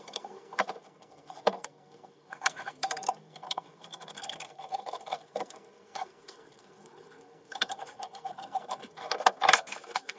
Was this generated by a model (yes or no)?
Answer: yes